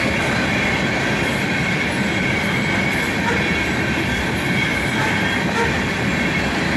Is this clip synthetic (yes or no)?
yes